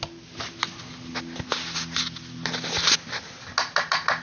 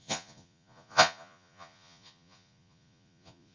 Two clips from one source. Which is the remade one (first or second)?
second